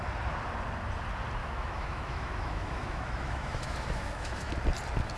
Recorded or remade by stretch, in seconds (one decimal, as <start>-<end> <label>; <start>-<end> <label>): 0.0-1.4 recorded; 1.4-4.5 remade; 4.5-5.2 recorded